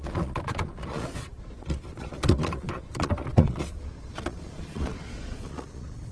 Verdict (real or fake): fake